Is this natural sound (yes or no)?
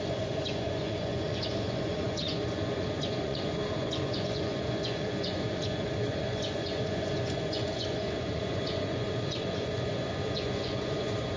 no